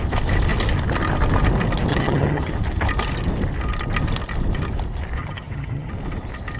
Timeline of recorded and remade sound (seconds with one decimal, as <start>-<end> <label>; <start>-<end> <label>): 0.0-1.9 recorded; 1.9-2.5 remade; 2.5-5.2 recorded; 5.2-5.9 remade; 5.9-6.6 recorded